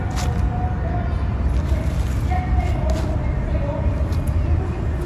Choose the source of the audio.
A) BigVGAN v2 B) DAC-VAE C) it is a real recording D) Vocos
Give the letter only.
C